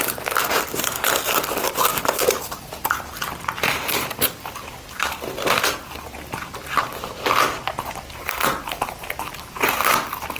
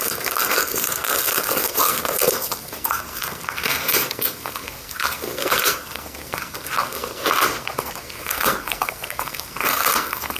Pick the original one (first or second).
first